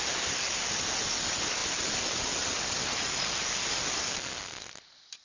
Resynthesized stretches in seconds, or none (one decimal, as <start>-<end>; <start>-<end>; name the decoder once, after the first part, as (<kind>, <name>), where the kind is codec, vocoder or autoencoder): none